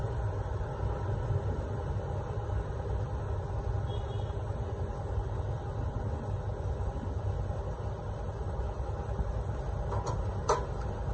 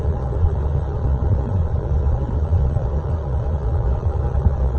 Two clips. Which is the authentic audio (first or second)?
first